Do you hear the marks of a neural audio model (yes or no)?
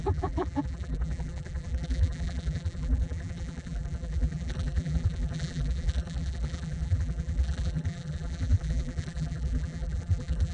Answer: yes